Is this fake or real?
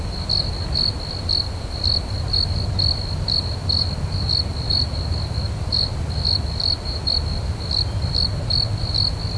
real